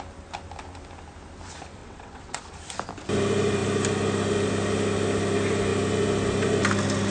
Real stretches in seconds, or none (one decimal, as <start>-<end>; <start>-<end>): 0.0-1.8; 2.4-7.1